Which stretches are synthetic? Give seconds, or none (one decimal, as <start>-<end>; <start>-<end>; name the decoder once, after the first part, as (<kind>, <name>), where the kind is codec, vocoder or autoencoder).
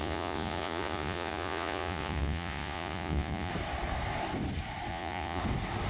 0.0-3.5 (vocoder, Vocos); 4.9-5.4